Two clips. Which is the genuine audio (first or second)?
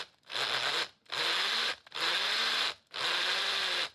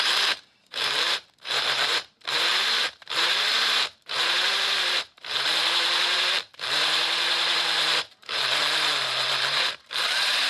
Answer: first